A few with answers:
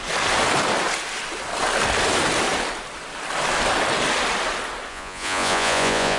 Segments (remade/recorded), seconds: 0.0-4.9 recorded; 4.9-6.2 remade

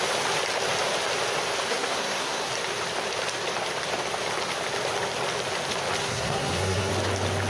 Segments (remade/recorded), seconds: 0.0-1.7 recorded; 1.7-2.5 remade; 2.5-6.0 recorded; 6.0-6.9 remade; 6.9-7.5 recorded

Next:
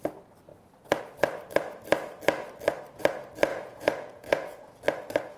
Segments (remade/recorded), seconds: 0.0-3.5 recorded; 3.5-4.8 remade; 4.8-5.4 recorded